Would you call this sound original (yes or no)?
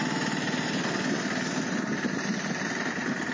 yes